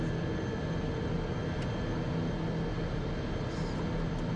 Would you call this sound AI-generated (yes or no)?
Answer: no